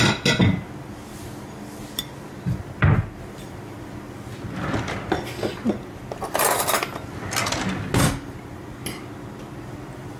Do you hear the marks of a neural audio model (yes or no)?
no